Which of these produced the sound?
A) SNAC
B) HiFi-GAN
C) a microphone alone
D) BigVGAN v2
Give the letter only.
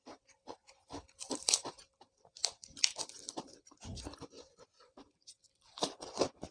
D